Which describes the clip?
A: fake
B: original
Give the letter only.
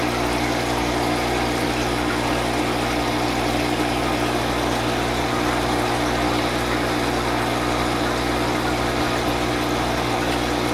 B